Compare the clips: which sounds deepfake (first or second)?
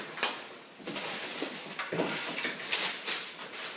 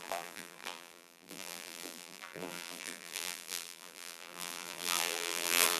second